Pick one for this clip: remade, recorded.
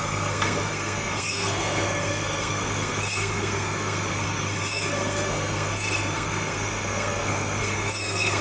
remade